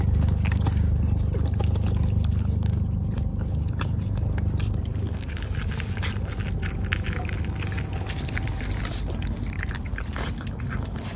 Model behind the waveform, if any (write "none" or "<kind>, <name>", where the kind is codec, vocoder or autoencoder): none